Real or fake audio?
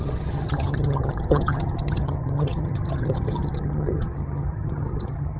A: fake